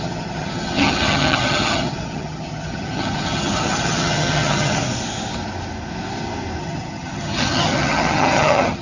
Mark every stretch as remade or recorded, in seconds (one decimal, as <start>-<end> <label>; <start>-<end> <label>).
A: 0.0-4.8 remade; 4.8-6.6 recorded; 6.6-8.8 remade